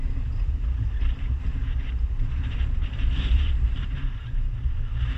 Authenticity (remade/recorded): remade